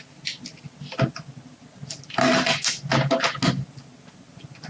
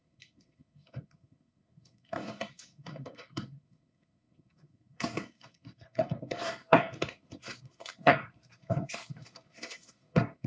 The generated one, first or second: second